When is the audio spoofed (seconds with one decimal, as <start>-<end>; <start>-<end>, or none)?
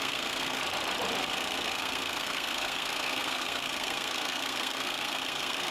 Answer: 0.0-0.6; 1.2-5.7